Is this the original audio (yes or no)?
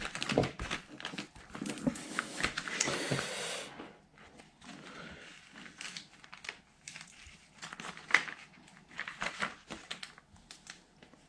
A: yes